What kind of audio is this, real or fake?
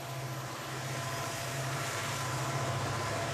fake